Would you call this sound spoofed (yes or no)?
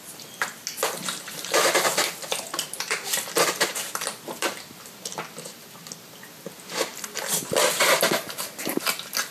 no